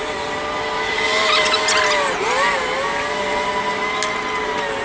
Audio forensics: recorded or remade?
recorded